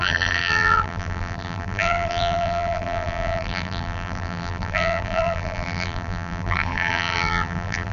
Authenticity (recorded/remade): remade